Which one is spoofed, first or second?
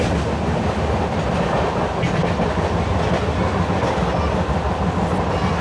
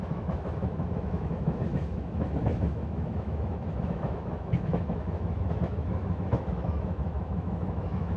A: second